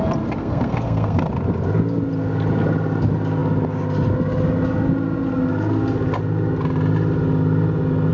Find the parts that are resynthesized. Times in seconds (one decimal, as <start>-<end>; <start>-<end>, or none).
0.4-1.3